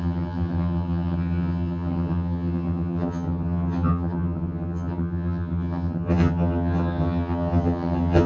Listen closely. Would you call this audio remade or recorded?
remade